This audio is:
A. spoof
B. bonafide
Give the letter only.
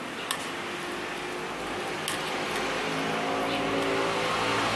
B